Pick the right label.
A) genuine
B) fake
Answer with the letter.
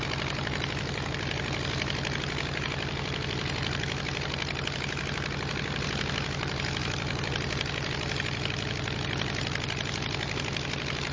A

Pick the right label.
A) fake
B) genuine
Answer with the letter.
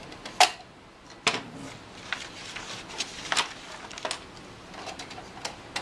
B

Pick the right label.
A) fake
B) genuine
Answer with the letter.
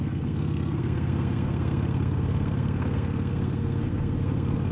A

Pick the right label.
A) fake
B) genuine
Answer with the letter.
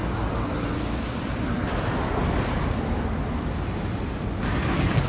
B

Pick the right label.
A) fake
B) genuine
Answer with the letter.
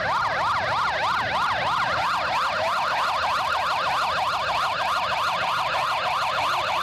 B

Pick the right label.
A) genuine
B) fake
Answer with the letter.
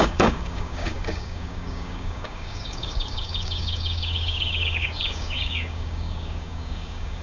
B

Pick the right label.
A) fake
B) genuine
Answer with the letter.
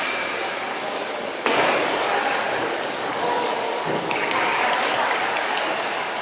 A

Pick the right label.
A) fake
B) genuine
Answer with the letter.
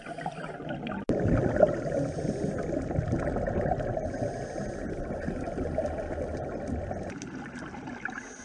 B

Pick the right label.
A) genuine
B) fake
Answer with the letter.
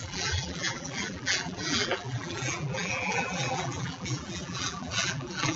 B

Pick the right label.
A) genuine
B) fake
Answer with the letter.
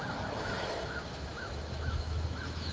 B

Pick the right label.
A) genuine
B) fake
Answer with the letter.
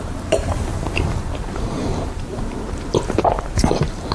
B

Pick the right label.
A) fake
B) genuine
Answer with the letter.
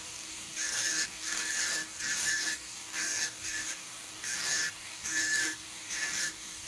A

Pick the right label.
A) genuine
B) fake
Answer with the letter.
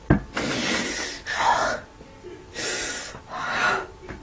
A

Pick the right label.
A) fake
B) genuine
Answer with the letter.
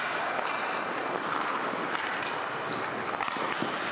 B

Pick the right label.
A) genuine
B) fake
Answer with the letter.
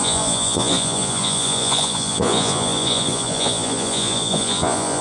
B